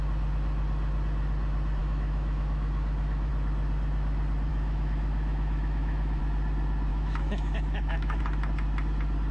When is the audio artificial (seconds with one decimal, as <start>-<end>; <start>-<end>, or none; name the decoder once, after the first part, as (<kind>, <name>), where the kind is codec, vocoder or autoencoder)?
1.8-3.3 (autoencoder, DAC-VAE); 4.5-6.2; 6.9-8.2